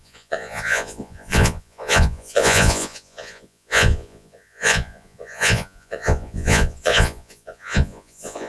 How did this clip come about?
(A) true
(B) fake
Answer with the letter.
B